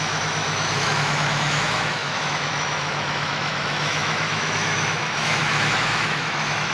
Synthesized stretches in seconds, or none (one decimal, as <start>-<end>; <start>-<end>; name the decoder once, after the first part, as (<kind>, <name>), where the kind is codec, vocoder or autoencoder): 0.0-6.7 (autoencoder, DAC-VAE)